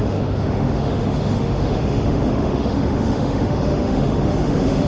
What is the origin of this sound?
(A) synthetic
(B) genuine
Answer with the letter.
A